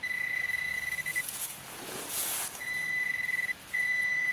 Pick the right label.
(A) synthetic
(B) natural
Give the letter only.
A